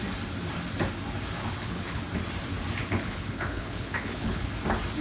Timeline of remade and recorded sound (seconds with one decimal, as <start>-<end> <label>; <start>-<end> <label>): 0.0-1.4 recorded; 1.4-2.0 remade; 2.0-2.8 recorded; 2.8-4.5 remade; 4.5-5.0 recorded